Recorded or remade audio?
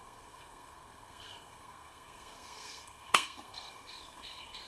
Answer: remade